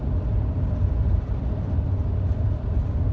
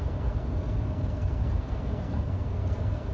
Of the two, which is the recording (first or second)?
first